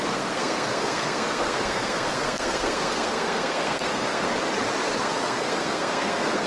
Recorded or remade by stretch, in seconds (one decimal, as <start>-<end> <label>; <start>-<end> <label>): 0.0-4.3 remade; 4.3-5.0 recorded; 5.0-6.5 remade